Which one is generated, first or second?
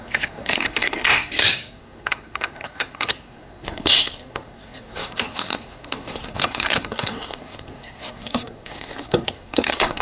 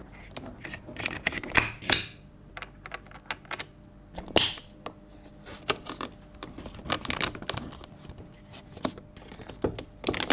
first